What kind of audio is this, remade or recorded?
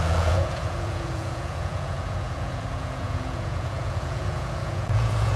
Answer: remade